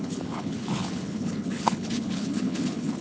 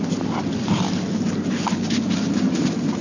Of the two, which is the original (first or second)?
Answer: second